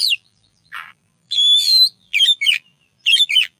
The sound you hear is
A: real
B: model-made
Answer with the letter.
B